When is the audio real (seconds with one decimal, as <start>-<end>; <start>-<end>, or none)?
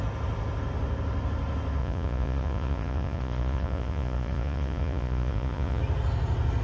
0.0-1.8; 5.8-6.6